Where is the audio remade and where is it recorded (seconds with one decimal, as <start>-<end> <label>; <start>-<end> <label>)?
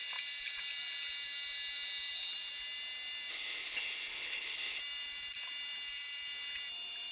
0.0-3.3 recorded; 3.3-4.8 remade; 4.8-7.1 recorded